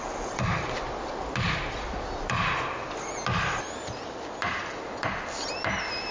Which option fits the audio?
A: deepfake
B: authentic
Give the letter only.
B